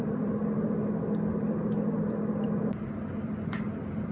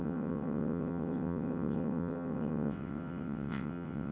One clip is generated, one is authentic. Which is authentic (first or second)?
first